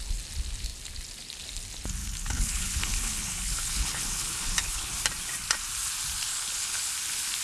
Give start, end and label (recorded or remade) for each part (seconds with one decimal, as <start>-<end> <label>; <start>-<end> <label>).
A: 0.0-2.0 recorded; 2.0-4.9 remade; 4.9-6.3 recorded; 6.3-6.9 remade; 6.9-7.4 recorded